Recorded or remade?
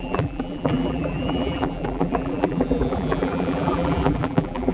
remade